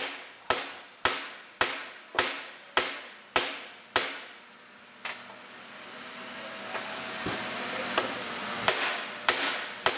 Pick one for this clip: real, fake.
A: real